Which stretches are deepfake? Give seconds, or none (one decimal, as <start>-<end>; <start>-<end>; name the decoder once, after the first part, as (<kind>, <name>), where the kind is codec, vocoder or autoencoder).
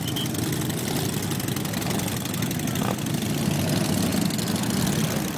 none